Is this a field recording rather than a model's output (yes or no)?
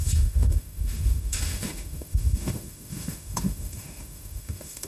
no